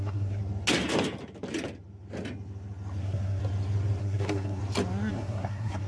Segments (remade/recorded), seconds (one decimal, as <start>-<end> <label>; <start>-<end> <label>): 0.0-0.4 remade; 0.4-3.0 recorded; 3.0-3.4 remade; 3.4-4.0 recorded; 4.0-4.6 remade; 4.6-5.1 recorded; 5.1-5.9 remade